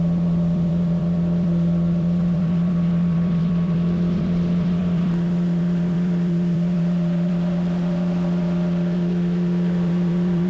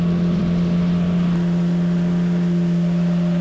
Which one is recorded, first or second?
second